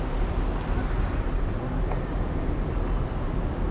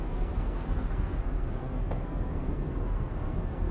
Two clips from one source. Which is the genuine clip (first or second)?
first